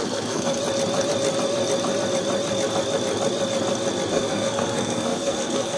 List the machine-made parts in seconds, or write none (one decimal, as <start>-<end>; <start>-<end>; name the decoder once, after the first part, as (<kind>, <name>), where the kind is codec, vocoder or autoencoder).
0.0-0.6 (codec, SNAC); 4.1-5.8

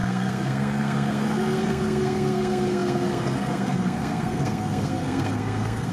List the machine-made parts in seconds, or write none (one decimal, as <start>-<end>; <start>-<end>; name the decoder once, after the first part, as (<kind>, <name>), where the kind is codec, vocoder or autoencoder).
0.0-5.9 (codec, SNAC)

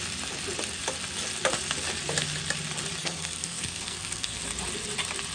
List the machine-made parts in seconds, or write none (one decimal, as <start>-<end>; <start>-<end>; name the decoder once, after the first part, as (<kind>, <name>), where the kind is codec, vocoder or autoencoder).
3.0-4.4 (codec, SNAC)

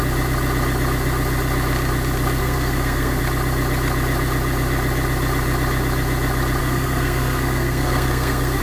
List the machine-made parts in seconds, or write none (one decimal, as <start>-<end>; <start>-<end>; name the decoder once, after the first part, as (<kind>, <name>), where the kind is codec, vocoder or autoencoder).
2.4-3.2 (codec, SNAC); 6.6-8.6

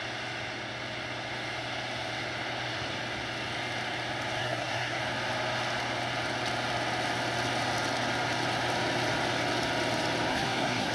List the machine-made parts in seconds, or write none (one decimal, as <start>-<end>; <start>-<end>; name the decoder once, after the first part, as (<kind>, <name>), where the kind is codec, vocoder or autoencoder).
4.4-5.0 (codec, SNAC); 10.3-10.9

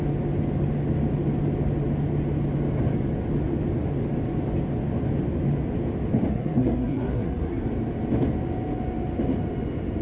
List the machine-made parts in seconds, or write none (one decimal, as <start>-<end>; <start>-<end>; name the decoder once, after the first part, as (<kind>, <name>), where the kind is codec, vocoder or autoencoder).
6.3-7.6 (codec, SNAC)

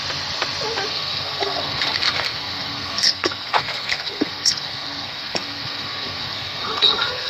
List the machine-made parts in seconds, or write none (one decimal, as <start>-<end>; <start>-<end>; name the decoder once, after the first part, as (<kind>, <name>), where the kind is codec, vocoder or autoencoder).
0.9-7.3 (codec, SNAC)

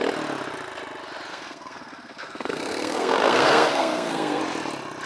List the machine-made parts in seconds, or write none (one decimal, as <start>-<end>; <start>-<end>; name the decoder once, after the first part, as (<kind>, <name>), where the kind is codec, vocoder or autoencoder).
1.3-4.4 (codec, SNAC)